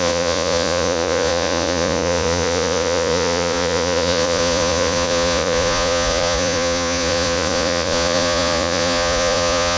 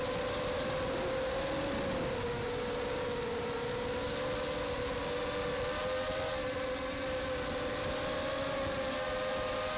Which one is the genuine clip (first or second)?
second